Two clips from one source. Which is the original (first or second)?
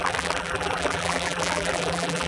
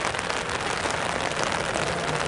second